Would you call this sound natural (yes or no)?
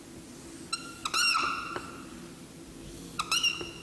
yes